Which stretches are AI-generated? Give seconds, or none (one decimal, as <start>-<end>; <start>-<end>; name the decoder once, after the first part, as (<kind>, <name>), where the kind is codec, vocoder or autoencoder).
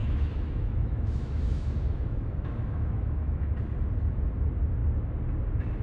0.0-3.5 (autoencoder, DAC-VAE)